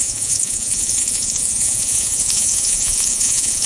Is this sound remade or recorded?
remade